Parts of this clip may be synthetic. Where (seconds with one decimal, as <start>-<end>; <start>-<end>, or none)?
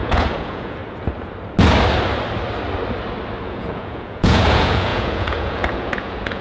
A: 0.0-0.8; 3.4-6.4